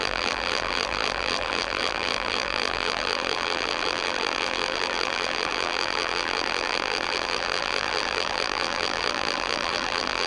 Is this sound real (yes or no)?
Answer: no